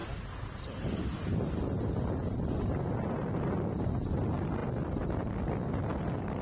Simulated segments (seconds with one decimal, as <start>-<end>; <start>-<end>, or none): none